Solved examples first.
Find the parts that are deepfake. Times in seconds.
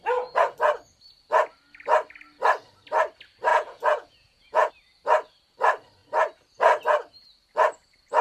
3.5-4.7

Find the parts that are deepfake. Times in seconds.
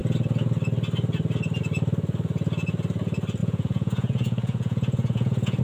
3.4-5.6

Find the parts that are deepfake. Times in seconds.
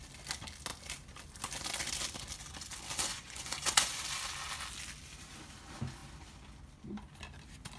3.1-4.0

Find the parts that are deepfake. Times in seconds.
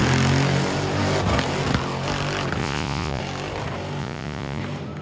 2.6-3.2; 4.0-4.6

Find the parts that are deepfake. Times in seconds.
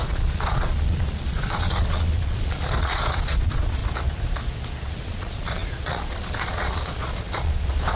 0.0-3.8; 4.9-8.0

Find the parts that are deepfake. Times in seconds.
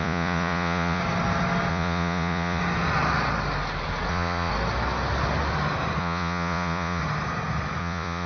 0.0-1.0; 1.7-2.6; 4.1-4.5; 6.0-7.0; 7.8-8.3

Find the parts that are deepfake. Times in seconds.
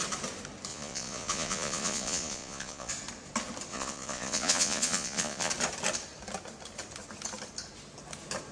0.7-2.9; 3.7-5.5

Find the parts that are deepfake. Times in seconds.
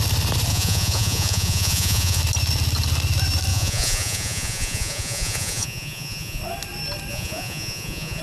0.5-2.2; 3.5-6.4; 7.1-8.2